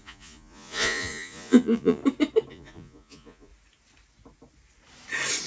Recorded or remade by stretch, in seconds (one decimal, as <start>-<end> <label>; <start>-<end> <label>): 0.0-2.0 remade; 2.0-2.5 recorded; 2.5-3.5 remade; 3.5-5.5 recorded